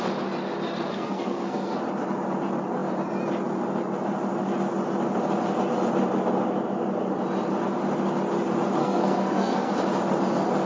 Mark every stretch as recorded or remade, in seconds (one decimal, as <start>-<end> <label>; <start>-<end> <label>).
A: 0.0-0.9 recorded; 0.9-1.8 remade; 1.8-8.8 recorded; 8.8-9.7 remade; 9.7-10.7 recorded